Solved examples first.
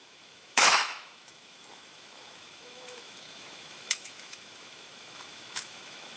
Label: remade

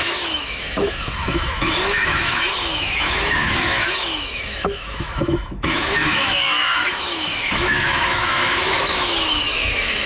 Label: remade